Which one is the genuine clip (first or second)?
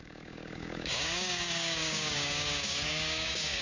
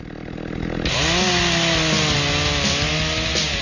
second